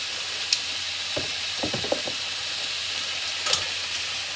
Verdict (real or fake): real